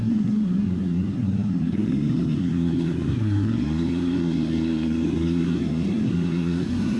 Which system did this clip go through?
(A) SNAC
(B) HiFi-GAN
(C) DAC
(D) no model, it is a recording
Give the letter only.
A